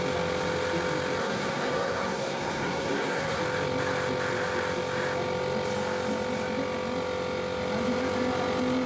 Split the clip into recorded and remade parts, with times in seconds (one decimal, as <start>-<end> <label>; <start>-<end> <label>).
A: 0.0-1.2 recorded; 1.2-3.4 remade; 3.4-8.9 recorded